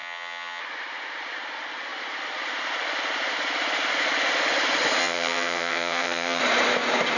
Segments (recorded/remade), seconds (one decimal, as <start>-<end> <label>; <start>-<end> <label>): 0.0-0.6 remade; 0.6-5.0 recorded; 5.0-6.4 remade; 6.4-7.2 recorded